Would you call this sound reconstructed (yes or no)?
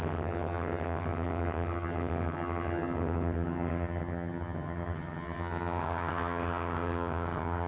yes